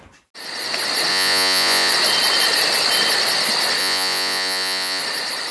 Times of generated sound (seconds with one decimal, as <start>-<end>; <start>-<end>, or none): 1.1-1.9; 3.8-5.0

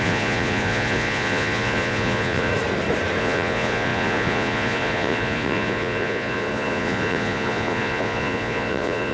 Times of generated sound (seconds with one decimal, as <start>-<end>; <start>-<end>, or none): 0.0-2.5; 3.2-9.1